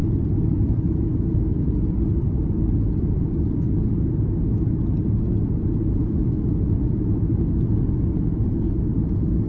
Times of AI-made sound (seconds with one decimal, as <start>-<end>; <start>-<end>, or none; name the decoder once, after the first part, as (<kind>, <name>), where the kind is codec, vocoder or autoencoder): none